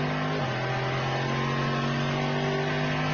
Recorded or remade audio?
recorded